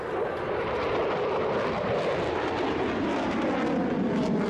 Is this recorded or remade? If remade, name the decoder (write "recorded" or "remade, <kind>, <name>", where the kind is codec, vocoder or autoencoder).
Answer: recorded